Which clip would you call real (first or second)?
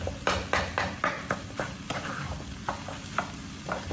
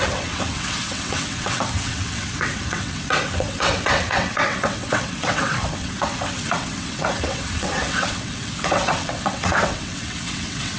first